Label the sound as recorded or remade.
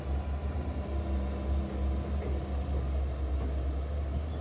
recorded